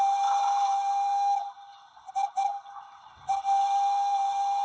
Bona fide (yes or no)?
yes